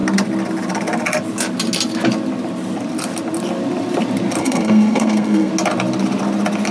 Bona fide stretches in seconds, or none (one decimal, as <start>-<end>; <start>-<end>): 0.0-4.4; 5.5-6.7